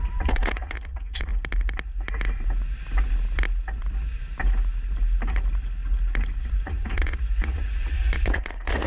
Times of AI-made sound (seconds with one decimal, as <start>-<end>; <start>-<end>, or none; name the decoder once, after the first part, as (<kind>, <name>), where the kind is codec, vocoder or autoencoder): 0.0-1.3 (vocoder, Vocos); 6.4-8.9